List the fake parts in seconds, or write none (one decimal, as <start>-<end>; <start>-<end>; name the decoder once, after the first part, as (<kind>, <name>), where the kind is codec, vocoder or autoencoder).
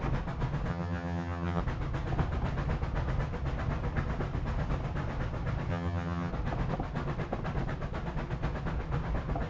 0.7-1.6 (vocoder, HiFi-GAN); 5.7-6.3